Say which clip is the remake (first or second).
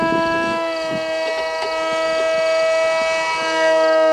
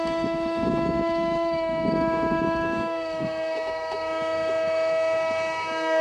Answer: second